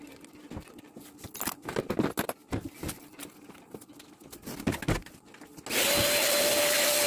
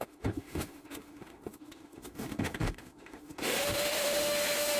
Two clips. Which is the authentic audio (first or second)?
first